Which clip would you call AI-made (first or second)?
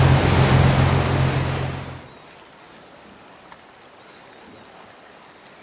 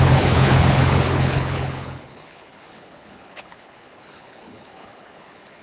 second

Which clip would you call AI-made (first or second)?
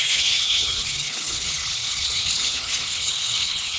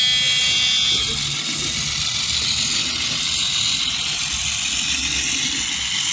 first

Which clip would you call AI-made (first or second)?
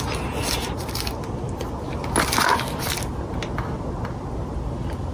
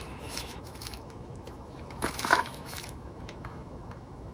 second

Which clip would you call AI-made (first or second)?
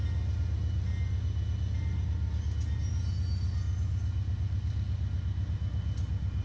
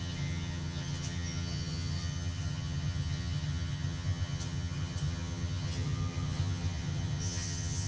second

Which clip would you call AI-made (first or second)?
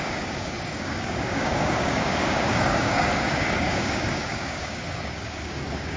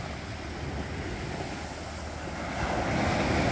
first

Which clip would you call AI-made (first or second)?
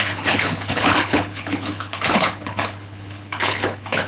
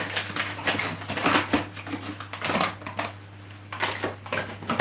first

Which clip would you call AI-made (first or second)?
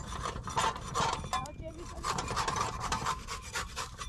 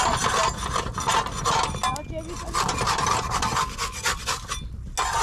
first